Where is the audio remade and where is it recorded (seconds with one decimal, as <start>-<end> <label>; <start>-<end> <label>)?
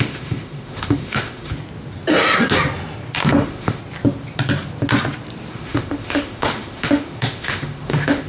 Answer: 0.0-1.5 remade; 1.5-3.4 recorded; 3.4-3.8 remade; 3.8-5.5 recorded; 5.5-8.3 remade